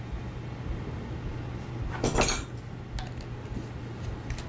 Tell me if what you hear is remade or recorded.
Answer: recorded